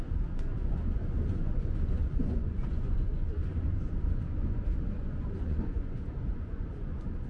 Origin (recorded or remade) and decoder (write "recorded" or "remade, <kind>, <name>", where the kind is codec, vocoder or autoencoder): remade, vocoder, Vocos